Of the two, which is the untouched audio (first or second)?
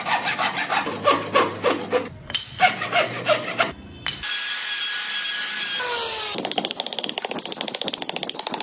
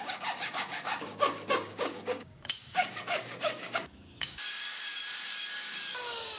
first